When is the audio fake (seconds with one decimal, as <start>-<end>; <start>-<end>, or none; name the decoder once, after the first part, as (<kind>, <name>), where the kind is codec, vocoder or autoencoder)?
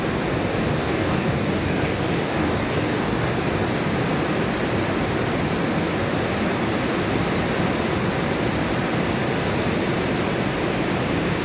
0.8-3.3 (codec, DAC)